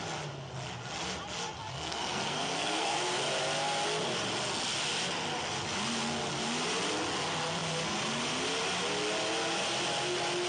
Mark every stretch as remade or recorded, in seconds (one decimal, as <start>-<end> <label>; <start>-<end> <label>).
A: 0.0-1.7 recorded; 1.7-3.0 remade; 3.0-10.5 recorded